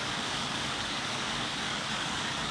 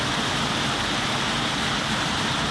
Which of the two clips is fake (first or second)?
first